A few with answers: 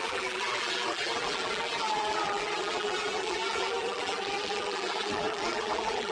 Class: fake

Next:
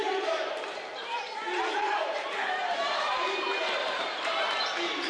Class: fake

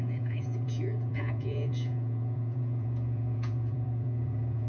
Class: fake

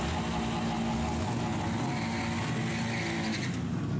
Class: real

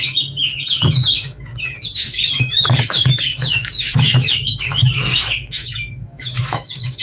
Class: fake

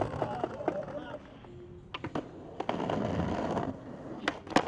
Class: real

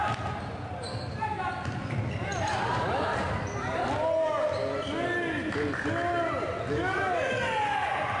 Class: real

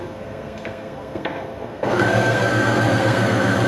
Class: fake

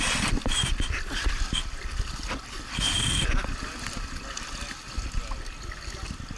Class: real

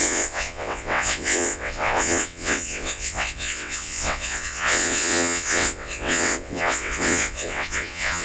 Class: fake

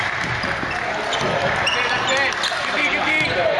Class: real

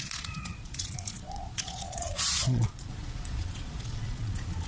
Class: fake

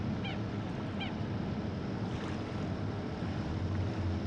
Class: real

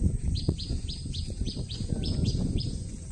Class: fake